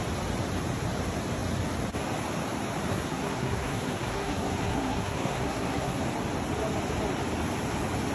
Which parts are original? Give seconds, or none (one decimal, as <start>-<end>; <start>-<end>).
0.0-2.9; 6.0-8.1